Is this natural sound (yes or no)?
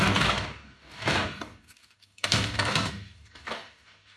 no